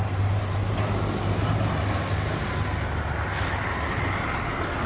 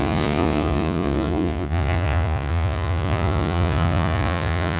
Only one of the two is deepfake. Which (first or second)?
second